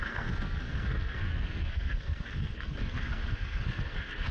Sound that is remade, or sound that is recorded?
remade